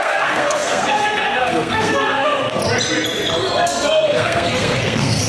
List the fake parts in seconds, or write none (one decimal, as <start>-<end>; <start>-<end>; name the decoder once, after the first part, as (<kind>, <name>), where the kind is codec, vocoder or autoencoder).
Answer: 0.0-2.6 (codec, SNAC); 3.4-5.3